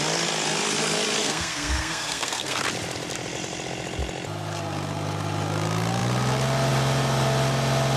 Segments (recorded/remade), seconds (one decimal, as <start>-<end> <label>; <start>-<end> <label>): 0.0-1.2 recorded; 1.2-2.6 remade; 2.6-8.0 recorded